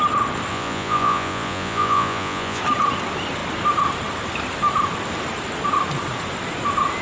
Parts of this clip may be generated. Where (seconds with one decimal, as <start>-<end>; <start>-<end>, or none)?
0.5-2.6